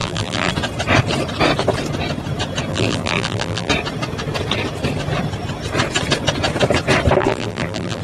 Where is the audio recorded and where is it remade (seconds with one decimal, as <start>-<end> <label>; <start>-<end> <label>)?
0.0-0.5 remade; 0.5-2.7 recorded; 2.7-3.7 remade; 3.7-7.2 recorded; 7.2-8.0 remade